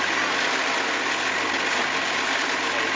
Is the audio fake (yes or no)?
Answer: no